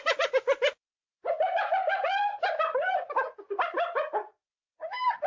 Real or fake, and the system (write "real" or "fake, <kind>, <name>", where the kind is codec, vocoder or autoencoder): real